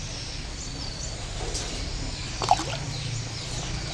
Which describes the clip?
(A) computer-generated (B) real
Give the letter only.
B